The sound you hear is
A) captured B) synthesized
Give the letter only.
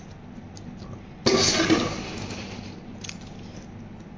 A